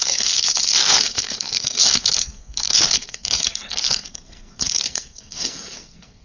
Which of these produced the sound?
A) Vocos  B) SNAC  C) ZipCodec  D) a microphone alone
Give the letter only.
B